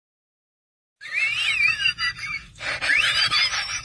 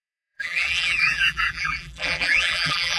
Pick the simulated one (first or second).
second